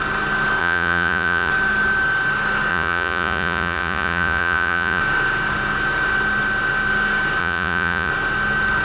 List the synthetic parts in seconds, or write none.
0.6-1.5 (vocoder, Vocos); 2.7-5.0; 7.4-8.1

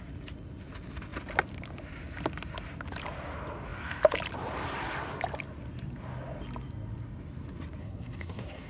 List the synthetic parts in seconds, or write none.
7.8-8.7 (codec, SNAC)

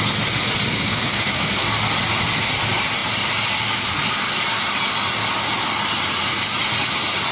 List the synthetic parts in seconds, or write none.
0.7-1.5 (codec, DAC)

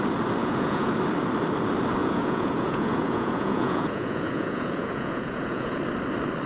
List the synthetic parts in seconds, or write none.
0.4-0.9 (vocoder, Vocos); 2.0-5.8

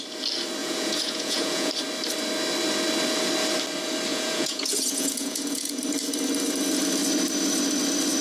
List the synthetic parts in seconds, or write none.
0.6-1.7 (vocoder, Vocos); 4.1-5.8

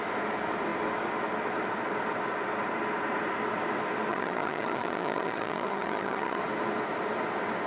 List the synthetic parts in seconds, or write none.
4.1-6.4 (vocoder, HiFi-GAN)